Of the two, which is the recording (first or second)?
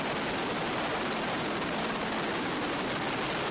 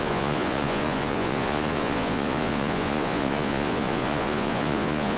first